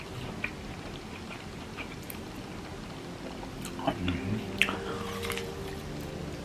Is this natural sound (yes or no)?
yes